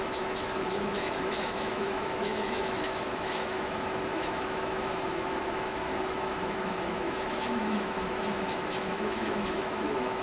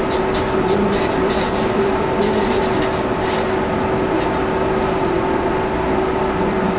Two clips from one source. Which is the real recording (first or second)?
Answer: second